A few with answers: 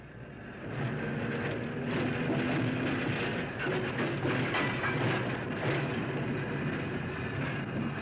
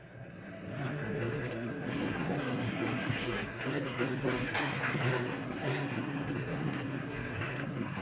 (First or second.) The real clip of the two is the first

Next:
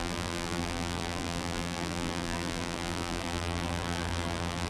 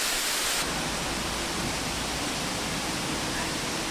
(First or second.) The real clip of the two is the second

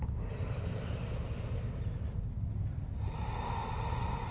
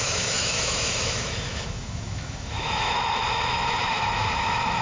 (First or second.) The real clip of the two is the first